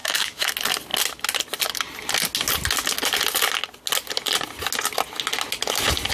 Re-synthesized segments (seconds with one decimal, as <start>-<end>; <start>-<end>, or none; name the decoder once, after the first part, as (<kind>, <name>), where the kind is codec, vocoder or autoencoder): 0.0-0.5 (autoencoder, DAC-VAE)